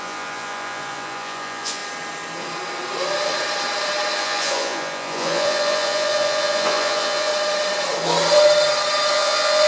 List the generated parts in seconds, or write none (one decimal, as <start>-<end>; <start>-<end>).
0.0-1.8; 4.2-7.3; 9.1-9.7